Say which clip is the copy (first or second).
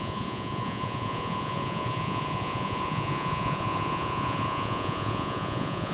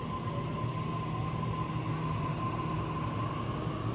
first